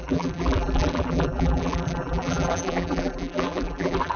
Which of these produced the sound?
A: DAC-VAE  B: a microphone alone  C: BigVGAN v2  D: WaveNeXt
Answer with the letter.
C